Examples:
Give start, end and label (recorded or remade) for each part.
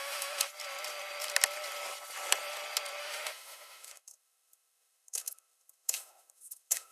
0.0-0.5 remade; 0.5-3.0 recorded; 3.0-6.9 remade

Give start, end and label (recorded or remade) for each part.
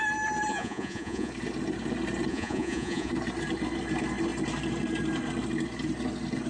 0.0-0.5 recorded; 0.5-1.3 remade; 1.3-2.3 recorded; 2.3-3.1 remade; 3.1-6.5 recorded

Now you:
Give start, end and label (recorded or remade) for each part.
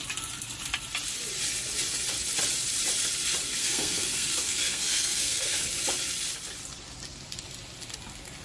0.0-3.6 recorded; 3.6-5.6 remade; 5.6-8.4 recorded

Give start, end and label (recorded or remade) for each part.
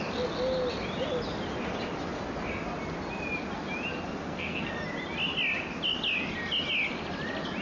0.0-4.2 recorded; 4.2-4.7 remade; 4.7-7.6 recorded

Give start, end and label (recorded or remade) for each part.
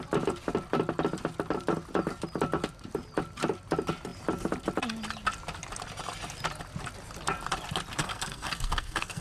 0.0-8.0 recorded; 8.0-9.2 remade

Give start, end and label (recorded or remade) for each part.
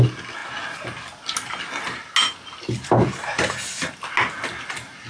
0.0-5.1 recorded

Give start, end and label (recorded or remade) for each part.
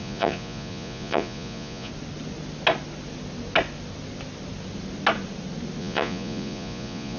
0.0-1.9 remade; 1.9-5.8 recorded; 5.8-7.2 remade